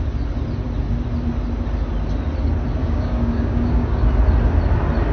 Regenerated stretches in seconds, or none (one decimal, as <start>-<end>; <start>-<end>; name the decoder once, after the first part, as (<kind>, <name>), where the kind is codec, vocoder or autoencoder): 2.8-4.0 (codec, DAC)